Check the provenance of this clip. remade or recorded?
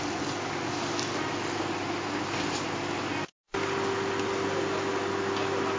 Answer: recorded